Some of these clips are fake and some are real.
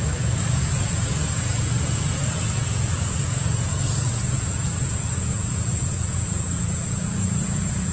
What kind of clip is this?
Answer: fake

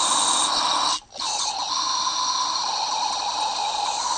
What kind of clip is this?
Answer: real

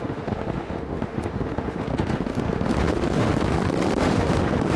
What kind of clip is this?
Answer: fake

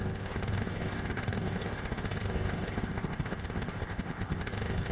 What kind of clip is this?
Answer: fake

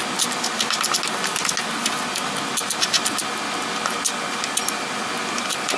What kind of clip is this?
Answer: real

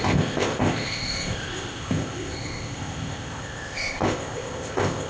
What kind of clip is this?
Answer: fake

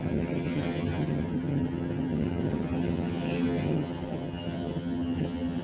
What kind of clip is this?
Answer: fake